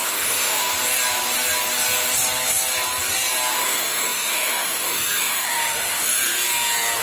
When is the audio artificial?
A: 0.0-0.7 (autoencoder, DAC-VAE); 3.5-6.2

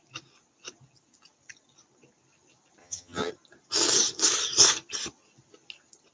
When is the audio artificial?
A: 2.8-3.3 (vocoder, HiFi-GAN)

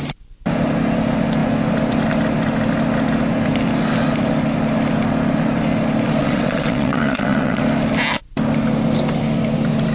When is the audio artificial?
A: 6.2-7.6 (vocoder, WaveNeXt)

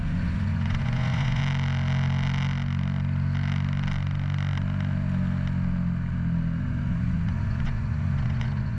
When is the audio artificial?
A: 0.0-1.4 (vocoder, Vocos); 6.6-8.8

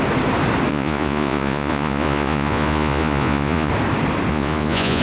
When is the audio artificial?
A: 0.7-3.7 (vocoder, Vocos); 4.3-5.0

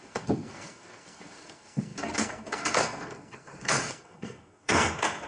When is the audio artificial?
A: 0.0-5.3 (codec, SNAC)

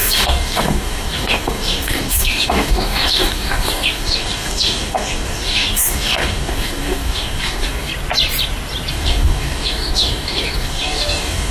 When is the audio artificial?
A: 0.0-7.9 (codec, DAC); 8.9-11.5